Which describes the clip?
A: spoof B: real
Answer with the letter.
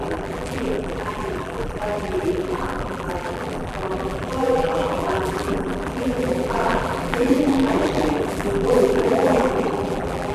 A